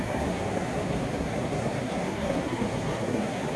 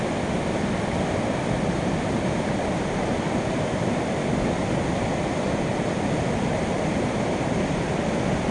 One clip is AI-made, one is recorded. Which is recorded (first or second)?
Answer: second